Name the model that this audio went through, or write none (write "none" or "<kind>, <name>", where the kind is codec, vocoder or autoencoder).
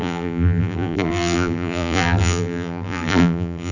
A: vocoder, BigVGAN v2